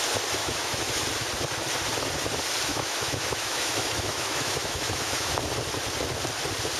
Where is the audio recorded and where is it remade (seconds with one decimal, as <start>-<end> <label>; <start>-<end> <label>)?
0.0-0.4 recorded; 0.4-0.9 remade; 0.9-2.7 recorded; 2.7-5.3 remade; 5.3-6.8 recorded